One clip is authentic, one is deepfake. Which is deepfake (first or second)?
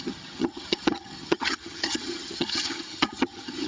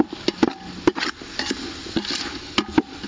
first